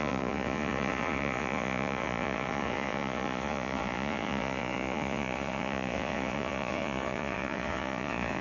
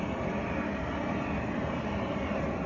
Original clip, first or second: second